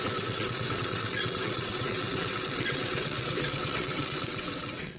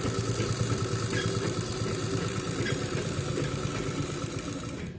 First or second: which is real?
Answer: second